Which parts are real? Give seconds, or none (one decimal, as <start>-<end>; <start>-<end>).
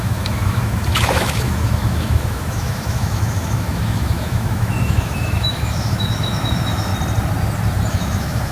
6.9-7.9